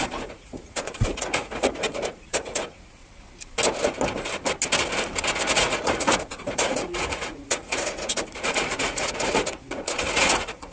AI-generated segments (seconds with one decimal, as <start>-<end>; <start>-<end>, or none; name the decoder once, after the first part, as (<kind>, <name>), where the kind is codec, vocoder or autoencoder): 0.0-3.0 (vocoder, Vocos); 5.5-10.7